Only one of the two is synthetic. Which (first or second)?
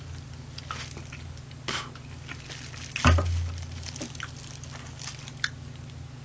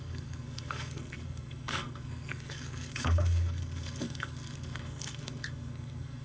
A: second